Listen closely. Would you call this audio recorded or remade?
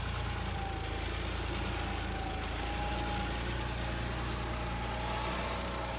recorded